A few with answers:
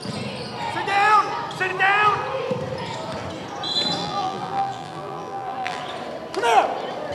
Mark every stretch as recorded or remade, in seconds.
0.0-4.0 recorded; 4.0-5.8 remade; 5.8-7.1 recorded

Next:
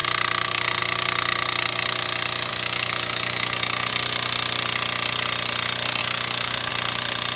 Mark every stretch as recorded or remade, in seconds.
0.0-2.5 recorded; 2.5-3.9 remade; 3.9-6.0 recorded; 6.0-6.7 remade; 6.7-7.4 recorded